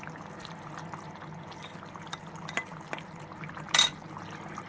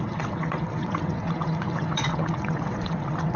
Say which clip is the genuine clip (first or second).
first